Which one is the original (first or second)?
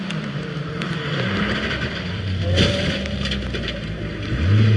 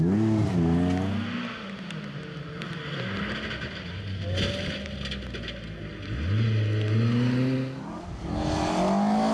second